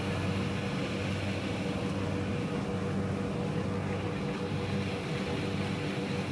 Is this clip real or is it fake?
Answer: real